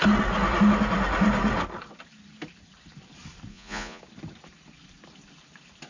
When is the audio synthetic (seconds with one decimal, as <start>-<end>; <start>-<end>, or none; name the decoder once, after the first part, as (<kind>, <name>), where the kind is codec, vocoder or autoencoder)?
3.5-4.0 (vocoder, Vocos)

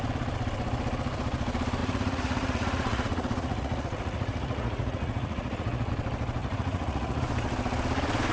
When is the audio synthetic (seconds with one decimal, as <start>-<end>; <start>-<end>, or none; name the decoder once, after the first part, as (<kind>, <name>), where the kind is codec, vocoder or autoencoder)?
1.8-5.9 (vocoder, Vocos); 6.4-7.2

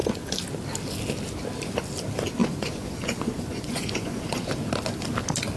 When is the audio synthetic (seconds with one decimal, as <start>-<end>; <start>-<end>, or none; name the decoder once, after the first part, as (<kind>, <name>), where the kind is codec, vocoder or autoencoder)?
2.4-4.5 (vocoder, Vocos)

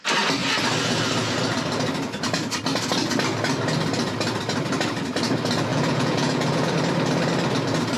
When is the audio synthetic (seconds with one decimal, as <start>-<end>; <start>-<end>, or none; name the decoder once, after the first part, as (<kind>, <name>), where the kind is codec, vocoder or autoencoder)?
5.7-6.7 (vocoder, Vocos)

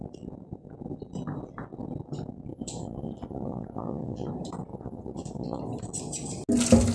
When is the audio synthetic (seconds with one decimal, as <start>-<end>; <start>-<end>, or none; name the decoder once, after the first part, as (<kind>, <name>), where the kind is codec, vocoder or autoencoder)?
2.5-4.3 (vocoder, Vocos); 4.7-5.6

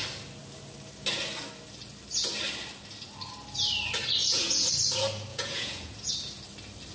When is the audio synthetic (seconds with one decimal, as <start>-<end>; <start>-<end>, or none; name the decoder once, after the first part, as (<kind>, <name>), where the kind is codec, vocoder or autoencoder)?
4.2-4.7 (vocoder, Vocos); 5.3-6.1